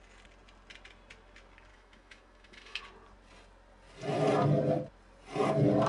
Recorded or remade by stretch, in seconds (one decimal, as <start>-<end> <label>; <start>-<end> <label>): 0.0-1.7 recorded; 1.7-2.8 remade; 2.8-5.9 recorded